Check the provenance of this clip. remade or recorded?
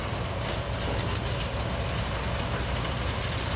recorded